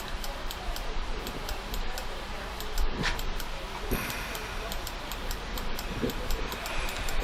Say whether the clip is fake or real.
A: fake